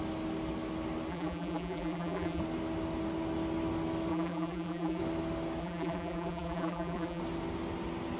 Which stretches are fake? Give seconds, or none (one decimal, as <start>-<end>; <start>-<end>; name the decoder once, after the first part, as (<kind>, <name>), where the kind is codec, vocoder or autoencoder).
1.1-2.4 (vocoder, BigVGAN v2); 4.1-5.0; 5.6-7.2